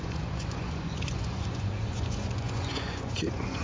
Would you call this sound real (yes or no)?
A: no